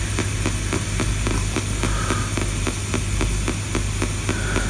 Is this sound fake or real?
real